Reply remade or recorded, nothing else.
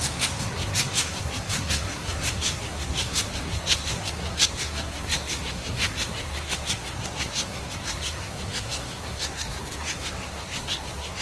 remade